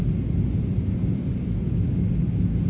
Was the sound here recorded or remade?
recorded